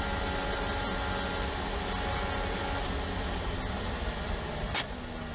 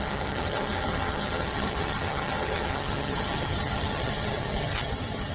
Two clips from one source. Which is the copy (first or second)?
second